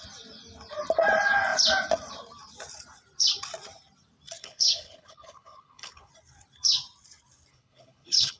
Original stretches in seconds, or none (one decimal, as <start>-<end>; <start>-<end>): 0.0-4.4; 6.1-7.5